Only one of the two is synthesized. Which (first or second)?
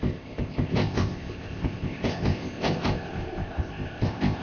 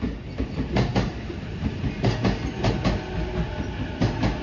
first